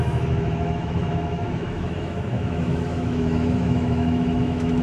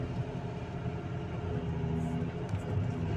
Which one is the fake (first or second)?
first